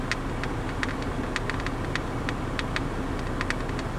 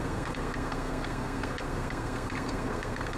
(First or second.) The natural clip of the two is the first